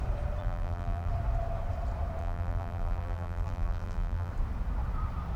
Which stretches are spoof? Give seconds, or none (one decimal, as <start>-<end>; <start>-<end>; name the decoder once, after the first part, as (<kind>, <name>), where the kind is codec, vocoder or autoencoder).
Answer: 0.4-1.1 (vocoder, BigVGAN v2); 2.2-4.3